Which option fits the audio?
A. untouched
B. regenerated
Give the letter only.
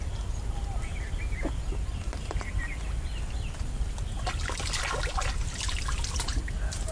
A